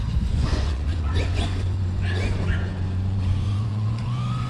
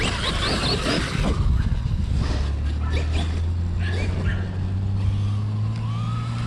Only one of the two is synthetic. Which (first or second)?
first